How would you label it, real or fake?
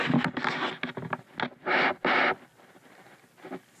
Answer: real